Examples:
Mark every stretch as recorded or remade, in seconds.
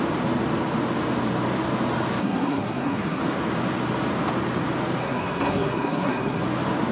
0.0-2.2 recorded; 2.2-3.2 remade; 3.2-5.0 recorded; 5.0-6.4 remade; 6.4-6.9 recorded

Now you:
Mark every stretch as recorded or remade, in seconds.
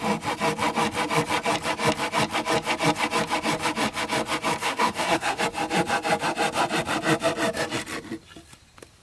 0.0-4.6 recorded; 4.6-5.4 remade; 5.4-9.0 recorded